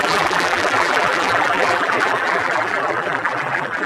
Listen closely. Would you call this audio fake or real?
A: fake